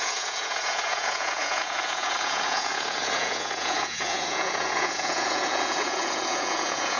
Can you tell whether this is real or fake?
fake